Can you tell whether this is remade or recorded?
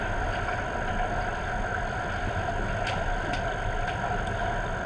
recorded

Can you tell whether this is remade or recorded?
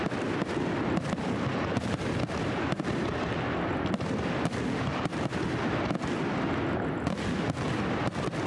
recorded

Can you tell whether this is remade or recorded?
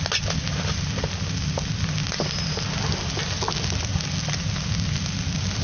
recorded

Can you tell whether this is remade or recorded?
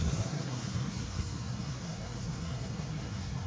remade